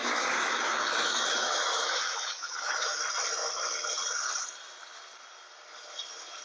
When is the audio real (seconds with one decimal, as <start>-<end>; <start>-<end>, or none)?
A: 3.0-6.4